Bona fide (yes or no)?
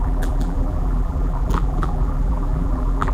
no